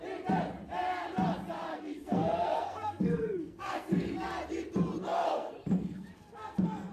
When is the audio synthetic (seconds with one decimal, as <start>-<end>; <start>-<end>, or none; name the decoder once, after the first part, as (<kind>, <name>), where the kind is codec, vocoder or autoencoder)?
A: 1.7-4.3 (codec, SNAC); 5.0-6.9